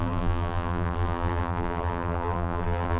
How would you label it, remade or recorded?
remade